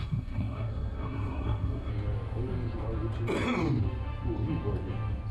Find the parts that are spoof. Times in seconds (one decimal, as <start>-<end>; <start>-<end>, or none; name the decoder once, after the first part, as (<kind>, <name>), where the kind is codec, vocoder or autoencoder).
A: 0.0-1.9 (codec, SNAC)